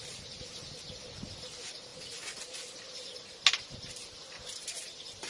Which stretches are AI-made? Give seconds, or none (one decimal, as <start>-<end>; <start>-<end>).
none